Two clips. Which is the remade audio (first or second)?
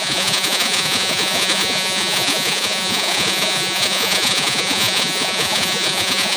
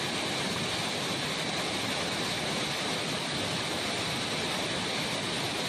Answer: first